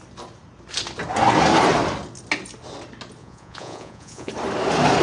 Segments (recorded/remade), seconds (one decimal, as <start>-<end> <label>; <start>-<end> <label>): 0.0-3.2 recorded; 3.2-4.3 remade; 4.3-5.0 recorded